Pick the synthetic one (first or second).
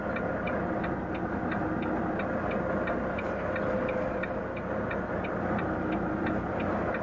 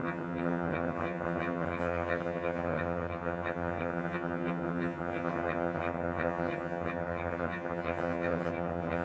second